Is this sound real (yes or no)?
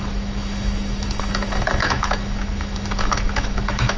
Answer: no